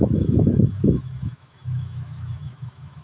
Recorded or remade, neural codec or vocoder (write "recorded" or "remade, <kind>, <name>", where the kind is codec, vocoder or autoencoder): remade, autoencoder, DAC-VAE